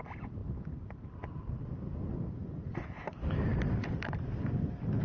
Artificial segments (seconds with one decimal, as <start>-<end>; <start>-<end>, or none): none